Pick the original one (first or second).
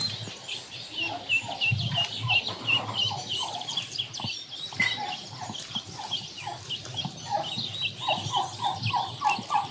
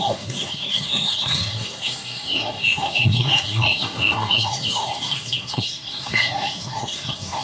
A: first